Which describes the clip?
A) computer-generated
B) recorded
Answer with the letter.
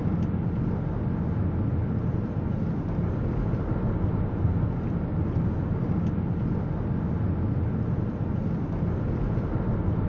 B